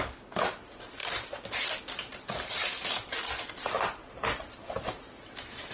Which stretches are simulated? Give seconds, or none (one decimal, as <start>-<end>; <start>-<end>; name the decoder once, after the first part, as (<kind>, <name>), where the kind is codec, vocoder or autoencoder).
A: 0.0-5.7 (vocoder, BigVGAN v2)